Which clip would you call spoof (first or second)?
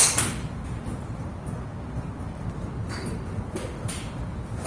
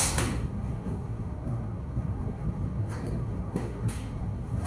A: second